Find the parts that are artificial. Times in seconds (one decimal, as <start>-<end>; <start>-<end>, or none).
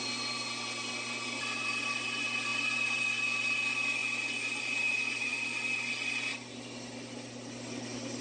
none